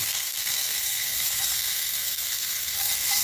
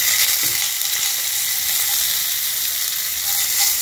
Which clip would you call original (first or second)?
second